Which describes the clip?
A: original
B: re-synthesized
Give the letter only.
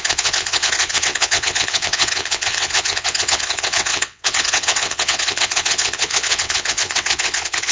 B